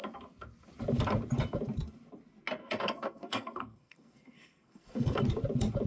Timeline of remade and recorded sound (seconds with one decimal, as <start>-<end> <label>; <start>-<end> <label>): 0.0-2.6 recorded; 2.6-5.2 remade; 5.2-5.9 recorded